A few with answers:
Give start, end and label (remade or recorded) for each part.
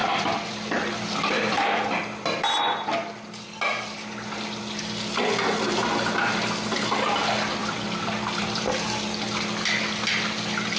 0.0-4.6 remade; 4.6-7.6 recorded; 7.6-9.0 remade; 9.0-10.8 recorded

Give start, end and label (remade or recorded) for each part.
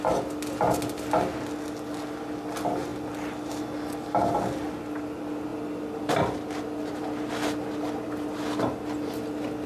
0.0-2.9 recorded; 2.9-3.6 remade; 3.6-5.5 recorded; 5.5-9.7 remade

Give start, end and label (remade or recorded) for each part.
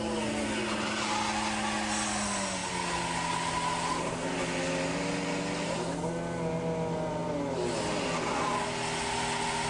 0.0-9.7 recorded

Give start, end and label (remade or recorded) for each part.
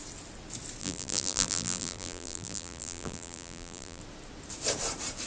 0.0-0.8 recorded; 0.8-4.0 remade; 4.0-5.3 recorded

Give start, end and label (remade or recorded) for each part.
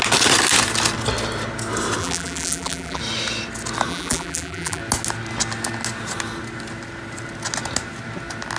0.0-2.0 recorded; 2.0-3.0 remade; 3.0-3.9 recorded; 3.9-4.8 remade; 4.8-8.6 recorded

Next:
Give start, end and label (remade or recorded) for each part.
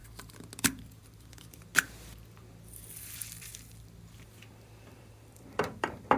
0.0-0.6 recorded; 0.6-1.7 remade; 1.7-3.0 recorded; 3.0-3.5 remade; 3.5-4.6 recorded; 4.6-6.2 remade